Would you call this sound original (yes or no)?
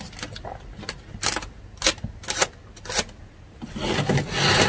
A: yes